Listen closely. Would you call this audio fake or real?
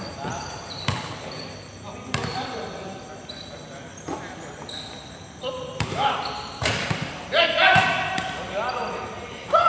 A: fake